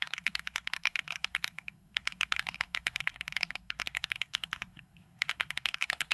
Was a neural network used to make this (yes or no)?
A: yes